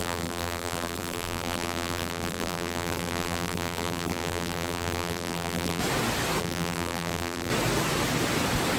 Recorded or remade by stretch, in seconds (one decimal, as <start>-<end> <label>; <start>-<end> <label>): 0.0-5.8 remade; 5.8-6.4 recorded; 6.4-7.5 remade; 7.5-8.8 recorded